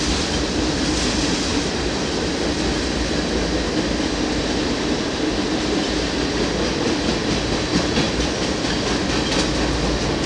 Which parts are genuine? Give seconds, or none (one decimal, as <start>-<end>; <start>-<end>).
0.0-10.3